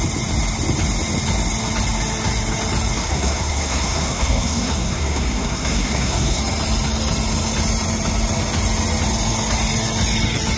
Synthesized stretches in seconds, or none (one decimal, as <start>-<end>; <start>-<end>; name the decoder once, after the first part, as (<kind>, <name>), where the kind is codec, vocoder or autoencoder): 3.0-6.4 (codec, SNAC)